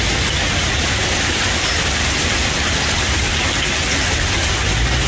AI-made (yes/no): no